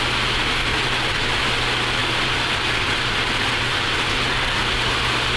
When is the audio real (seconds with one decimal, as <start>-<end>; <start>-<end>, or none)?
0.0-0.7; 1.6-2.0; 4.6-5.4